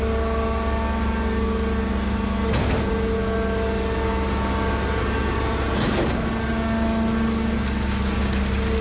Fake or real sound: real